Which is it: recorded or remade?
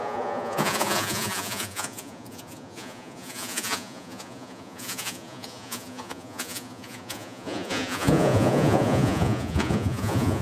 remade